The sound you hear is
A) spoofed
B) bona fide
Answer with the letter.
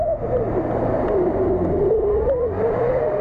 B